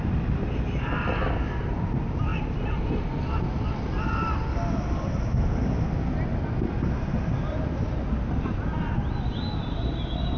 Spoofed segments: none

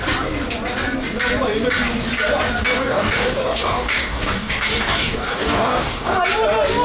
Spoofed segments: 2.6-6.2 (codec, DAC)

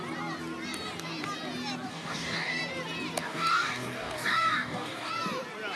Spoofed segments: 1.9-2.6 (codec, DAC); 3.2-5.1

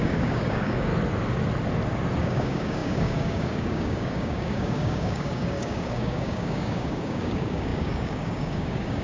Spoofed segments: 0.0-0.9 (codec, DAC); 2.2-9.0